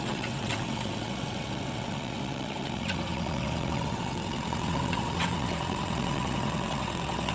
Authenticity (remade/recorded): remade